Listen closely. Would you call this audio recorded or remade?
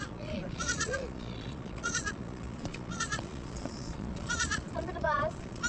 remade